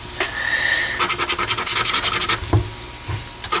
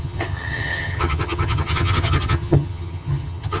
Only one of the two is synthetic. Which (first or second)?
second